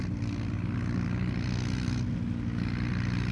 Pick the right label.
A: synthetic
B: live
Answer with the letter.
B